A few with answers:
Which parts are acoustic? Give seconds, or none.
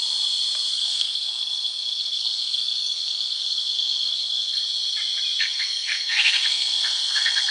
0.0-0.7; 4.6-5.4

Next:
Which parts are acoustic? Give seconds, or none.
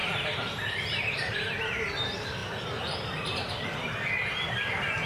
0.0-5.1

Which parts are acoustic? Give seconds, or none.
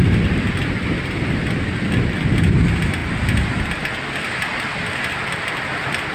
0.0-6.1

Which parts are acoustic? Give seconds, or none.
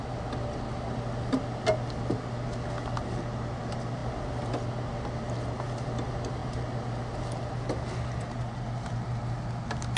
0.0-10.0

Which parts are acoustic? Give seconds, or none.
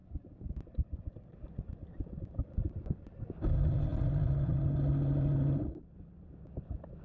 0.0-7.0